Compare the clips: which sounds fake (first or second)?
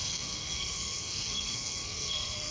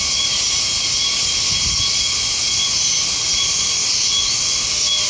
first